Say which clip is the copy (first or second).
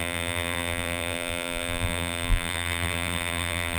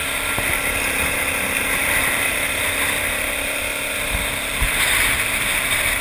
first